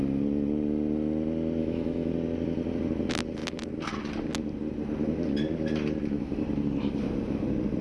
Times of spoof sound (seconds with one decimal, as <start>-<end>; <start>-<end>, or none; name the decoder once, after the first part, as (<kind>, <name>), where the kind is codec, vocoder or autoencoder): 1.6-2.1 (autoencoder, DAC-VAE)